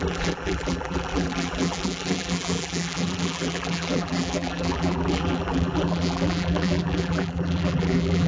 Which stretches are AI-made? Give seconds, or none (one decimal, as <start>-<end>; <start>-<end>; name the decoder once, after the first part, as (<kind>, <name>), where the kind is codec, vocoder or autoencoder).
0.0-8.3 (vocoder, BigVGAN v2)